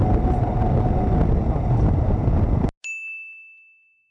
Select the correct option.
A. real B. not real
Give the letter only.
A